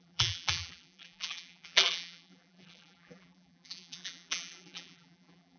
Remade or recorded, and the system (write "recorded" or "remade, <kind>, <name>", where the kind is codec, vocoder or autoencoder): remade, vocoder, BigVGAN v2